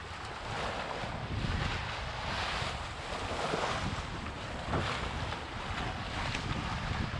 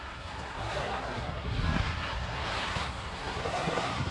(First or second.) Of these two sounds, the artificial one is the second